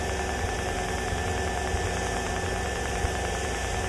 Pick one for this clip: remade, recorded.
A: recorded